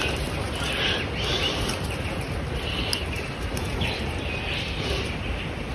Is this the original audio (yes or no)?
yes